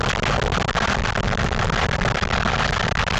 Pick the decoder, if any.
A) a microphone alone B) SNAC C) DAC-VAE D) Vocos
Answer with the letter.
A